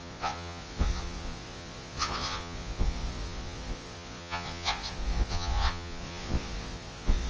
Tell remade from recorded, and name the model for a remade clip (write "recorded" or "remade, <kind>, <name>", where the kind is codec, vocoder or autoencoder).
remade, vocoder, Vocos